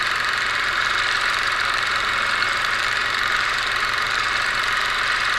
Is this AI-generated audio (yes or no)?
yes